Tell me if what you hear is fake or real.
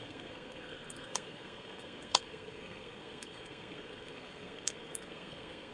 fake